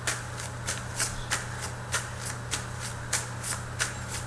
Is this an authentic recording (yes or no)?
yes